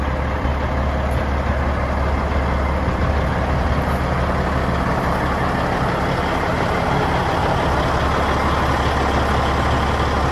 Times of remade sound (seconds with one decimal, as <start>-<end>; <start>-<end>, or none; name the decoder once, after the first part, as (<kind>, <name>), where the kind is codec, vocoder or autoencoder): none